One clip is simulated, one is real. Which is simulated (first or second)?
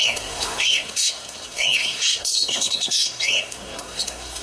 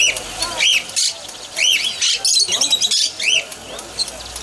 first